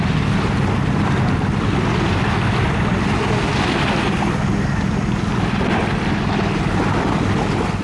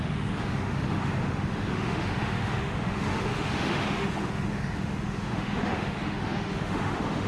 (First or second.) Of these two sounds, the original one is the first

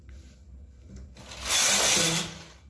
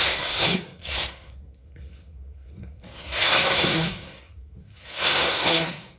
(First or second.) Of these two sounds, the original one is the first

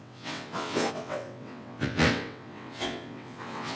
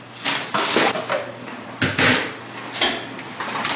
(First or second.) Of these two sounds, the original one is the second